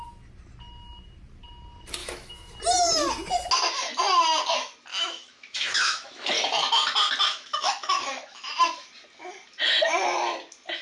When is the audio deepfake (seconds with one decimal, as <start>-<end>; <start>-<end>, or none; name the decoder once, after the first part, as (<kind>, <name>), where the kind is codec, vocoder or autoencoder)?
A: 2.0-2.5 (autoencoder, DAC-VAE); 4.9-6.3; 7.3-8.5